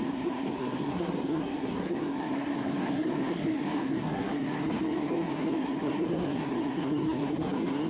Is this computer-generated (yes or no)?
yes